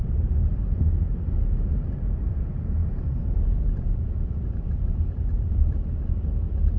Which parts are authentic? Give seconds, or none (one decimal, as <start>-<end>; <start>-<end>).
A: none